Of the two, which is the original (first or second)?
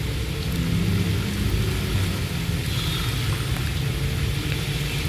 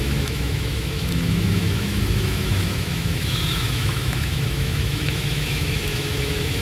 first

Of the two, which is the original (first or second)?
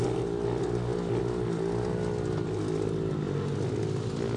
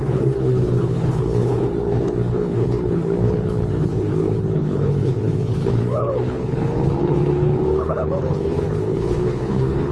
first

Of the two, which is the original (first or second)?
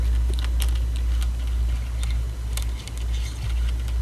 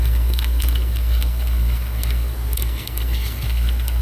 first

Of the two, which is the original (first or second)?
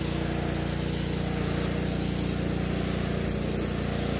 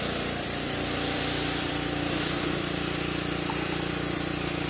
first